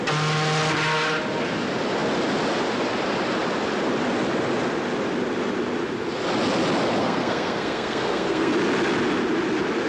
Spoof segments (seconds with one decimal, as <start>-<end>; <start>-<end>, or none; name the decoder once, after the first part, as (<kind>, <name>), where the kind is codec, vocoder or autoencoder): 7.0-8.5 (codec, SNAC)